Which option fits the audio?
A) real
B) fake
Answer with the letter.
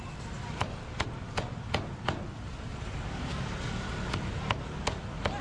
A